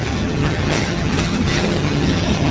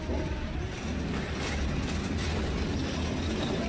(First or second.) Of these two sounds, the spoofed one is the first